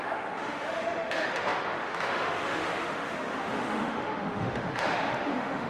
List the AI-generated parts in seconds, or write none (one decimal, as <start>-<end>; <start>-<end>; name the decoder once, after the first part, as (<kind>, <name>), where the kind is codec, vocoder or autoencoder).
0.0-5.7 (autoencoder, DAC-VAE)